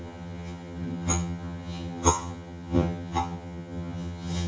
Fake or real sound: fake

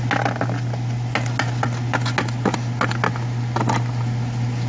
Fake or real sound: real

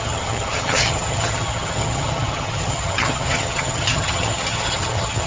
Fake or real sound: fake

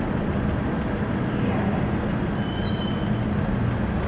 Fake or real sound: real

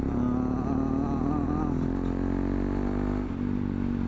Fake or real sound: real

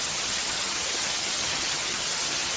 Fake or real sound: fake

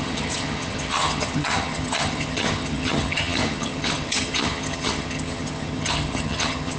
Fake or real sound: fake